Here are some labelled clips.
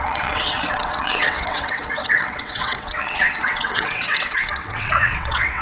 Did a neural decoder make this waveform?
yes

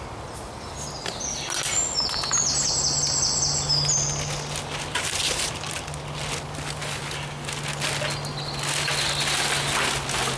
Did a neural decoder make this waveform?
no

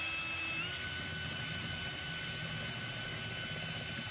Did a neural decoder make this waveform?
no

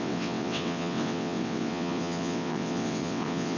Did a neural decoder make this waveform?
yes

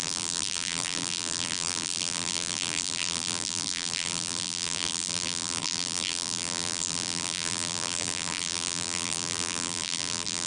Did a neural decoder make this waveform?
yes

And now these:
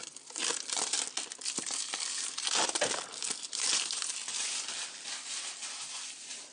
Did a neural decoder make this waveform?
no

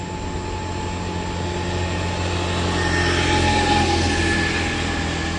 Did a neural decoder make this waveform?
no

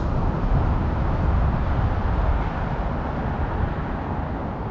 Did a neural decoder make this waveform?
no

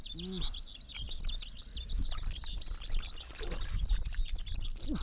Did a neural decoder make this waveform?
no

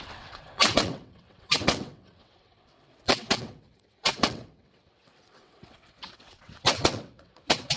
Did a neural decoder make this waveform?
yes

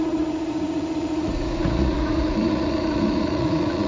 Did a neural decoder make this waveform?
yes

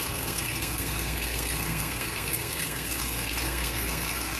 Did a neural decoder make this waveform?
yes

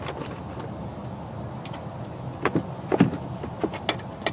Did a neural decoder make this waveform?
no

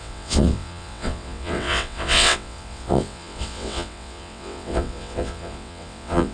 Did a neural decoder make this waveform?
yes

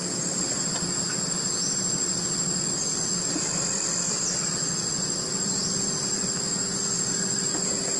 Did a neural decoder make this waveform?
no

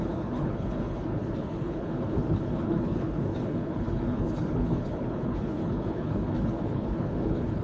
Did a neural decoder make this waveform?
yes